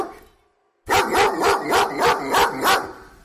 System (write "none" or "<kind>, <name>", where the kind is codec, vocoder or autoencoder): none